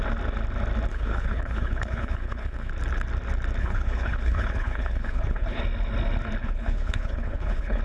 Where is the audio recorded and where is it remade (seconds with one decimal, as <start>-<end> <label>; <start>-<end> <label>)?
0.0-0.9 recorded; 0.9-2.7 remade; 2.7-3.6 recorded; 3.6-5.6 remade; 5.6-6.4 recorded; 6.4-7.8 remade

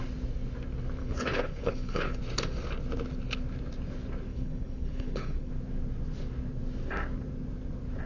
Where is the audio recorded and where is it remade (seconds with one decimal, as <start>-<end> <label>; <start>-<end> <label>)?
0.0-1.0 recorded; 1.0-2.2 remade; 2.2-4.3 recorded; 4.3-5.5 remade; 5.5-8.1 recorded

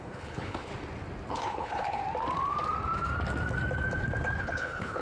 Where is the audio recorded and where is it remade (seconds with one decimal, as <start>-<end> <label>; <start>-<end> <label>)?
0.0-0.7 remade; 0.7-1.3 recorded; 1.3-2.0 remade; 2.0-4.4 recorded; 4.4-5.0 remade

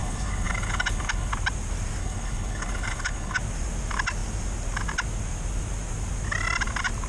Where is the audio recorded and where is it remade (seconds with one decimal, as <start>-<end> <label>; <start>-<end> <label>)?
0.0-1.3 remade; 1.3-2.0 recorded; 2.0-3.4 remade; 3.4-7.1 recorded

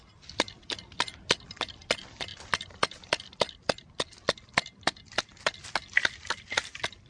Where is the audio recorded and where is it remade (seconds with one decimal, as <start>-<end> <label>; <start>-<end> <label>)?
0.0-7.1 recorded

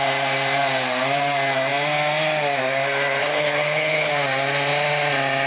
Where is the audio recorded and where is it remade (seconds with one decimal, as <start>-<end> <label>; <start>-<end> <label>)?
0.0-3.2 recorded; 3.2-4.1 remade; 4.1-5.5 recorded